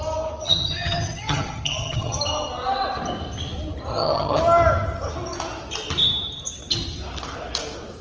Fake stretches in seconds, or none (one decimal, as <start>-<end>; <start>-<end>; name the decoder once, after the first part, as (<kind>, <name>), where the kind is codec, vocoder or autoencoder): 0.4-2.2 (vocoder, HiFi-GAN); 3.9-4.4